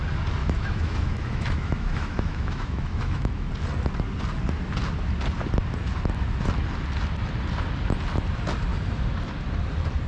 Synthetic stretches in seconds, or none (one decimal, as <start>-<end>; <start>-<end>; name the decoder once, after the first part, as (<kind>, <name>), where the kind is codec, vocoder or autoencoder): 0.4-3.5 (autoencoder, DAC-VAE)